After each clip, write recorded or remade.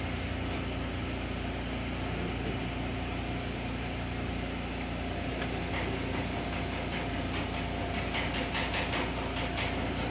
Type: recorded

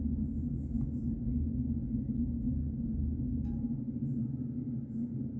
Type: recorded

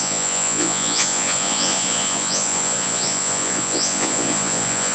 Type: remade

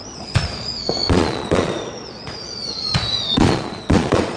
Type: remade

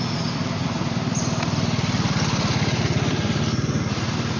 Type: recorded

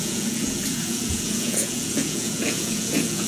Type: remade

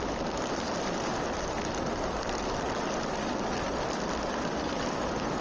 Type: recorded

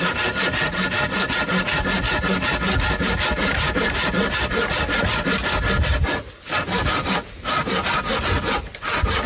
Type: recorded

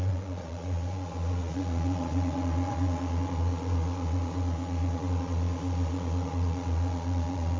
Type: remade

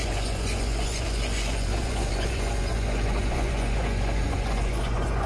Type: remade